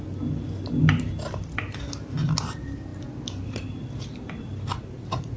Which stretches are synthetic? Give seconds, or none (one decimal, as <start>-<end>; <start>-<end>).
none